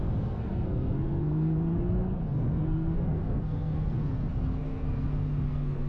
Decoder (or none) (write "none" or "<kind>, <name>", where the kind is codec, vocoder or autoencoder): codec, SNAC